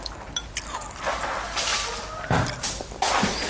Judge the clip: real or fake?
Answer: real